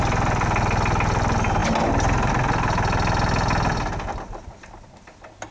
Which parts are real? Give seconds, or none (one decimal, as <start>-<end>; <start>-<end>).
0.0-5.5